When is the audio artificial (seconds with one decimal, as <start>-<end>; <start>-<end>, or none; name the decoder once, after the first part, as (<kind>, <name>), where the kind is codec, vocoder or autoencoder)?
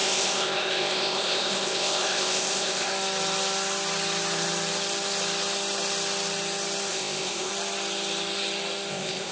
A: 0.0-2.9 (codec, ZipCodec); 6.9-7.5; 8.9-9.3